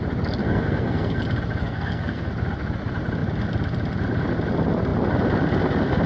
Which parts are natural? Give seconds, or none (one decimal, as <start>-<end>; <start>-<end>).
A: 0.0-0.4; 1.2-1.6; 2.3-6.1

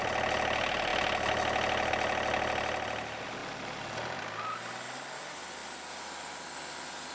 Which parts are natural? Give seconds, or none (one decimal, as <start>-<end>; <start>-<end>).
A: 0.0-7.1

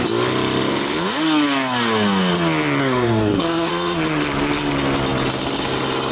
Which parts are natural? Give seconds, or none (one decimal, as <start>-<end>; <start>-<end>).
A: 0.0-2.8; 3.7-6.1

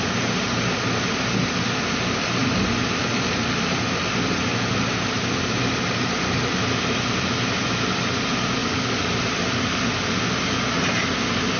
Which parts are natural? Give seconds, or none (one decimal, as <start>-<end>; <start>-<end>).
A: 0.0-11.6

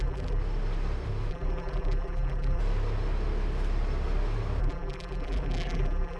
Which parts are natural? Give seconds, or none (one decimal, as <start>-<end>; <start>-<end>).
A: 0.4-1.3; 2.6-4.6

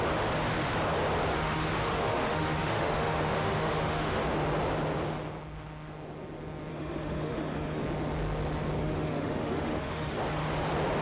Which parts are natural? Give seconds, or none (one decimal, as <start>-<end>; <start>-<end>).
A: 0.0-1.3; 4.2-6.7; 7.8-8.8; 10.1-11.0